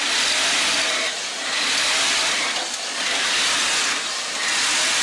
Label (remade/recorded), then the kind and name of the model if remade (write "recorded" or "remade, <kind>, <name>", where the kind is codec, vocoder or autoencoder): recorded